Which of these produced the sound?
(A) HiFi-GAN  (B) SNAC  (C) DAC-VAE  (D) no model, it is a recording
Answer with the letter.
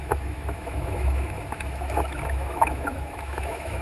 C